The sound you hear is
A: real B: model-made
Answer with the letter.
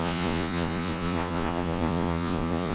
B